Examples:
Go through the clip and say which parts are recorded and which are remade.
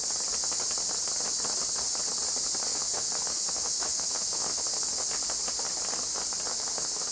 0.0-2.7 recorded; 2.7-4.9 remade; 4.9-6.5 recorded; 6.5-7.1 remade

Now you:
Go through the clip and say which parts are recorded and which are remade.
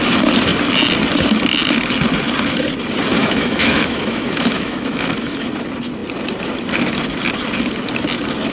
0.0-3.2 recorded; 3.2-5.5 remade; 5.5-8.5 recorded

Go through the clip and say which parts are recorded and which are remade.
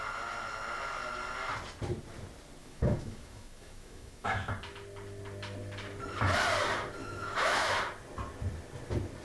0.0-2.6 recorded; 2.6-4.5 remade; 4.5-7.0 recorded; 7.0-7.8 remade; 7.8-9.2 recorded